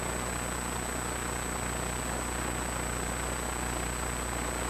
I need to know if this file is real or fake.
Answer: real